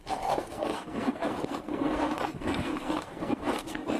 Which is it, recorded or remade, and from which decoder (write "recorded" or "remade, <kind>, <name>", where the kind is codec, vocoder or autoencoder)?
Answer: remade, codec, SNAC